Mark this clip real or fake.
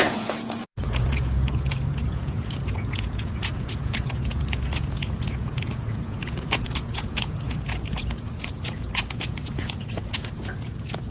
fake